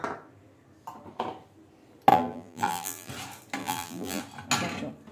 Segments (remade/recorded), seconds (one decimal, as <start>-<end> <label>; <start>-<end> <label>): 0.0-2.1 recorded; 2.1-3.1 remade; 3.1-3.6 recorded; 3.6-4.2 remade; 4.2-5.1 recorded